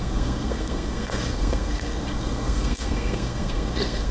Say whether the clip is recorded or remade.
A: remade